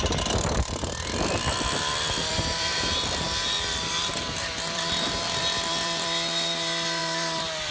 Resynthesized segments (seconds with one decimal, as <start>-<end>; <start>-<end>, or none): 0.0-7.7